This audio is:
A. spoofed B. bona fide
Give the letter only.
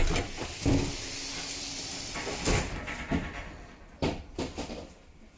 A